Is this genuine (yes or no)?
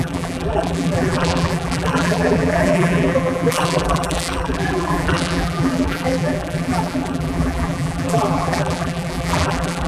no